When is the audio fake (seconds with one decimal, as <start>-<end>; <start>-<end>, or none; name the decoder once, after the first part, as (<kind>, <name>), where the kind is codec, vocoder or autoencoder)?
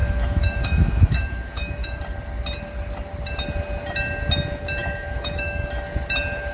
0.0-2.0 (autoencoder, DAC-VAE); 4.8-5.7